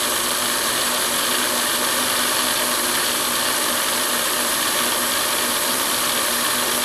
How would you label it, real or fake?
fake